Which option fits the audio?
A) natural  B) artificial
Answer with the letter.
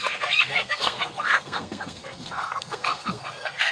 B